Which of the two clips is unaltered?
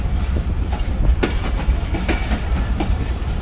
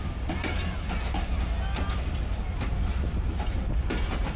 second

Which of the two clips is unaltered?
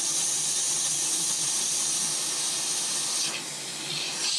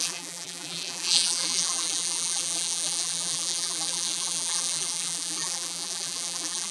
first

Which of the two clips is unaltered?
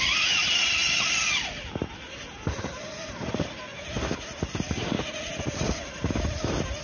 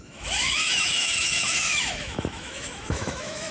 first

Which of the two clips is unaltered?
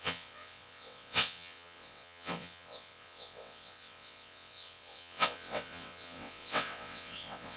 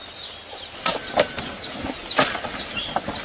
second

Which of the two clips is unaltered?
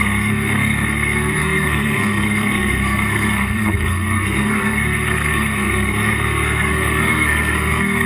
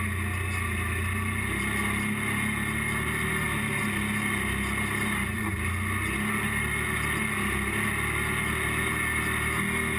second